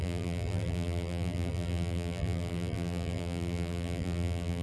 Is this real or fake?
fake